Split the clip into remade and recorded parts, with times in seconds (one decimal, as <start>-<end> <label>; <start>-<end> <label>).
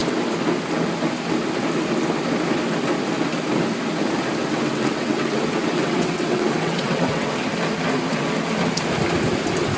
0.0-4.4 recorded; 4.4-7.3 remade; 7.3-9.8 recorded